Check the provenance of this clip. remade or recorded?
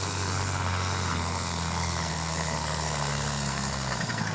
remade